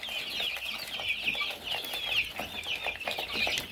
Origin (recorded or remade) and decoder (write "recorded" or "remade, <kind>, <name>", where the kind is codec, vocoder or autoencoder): recorded